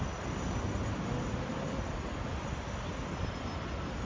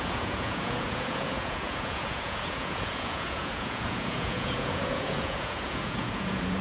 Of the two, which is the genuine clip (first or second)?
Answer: first